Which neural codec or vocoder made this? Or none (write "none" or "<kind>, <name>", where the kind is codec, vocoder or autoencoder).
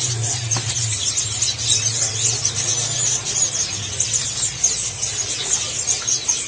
none